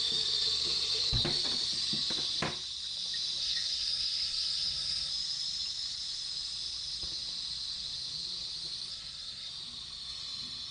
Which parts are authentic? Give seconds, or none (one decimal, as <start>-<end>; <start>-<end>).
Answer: 0.0-3.4; 5.1-8.9; 9.5-10.7